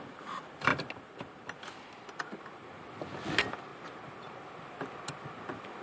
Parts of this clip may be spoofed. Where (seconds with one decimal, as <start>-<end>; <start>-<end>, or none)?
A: none